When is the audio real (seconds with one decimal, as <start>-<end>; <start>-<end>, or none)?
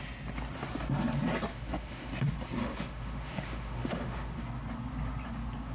0.0-1.5; 2.1-2.6; 4.4-5.7